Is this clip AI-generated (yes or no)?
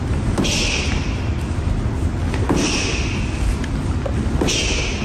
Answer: no